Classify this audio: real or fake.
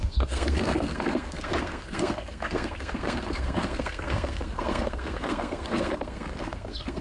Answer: fake